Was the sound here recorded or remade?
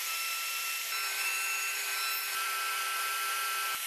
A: remade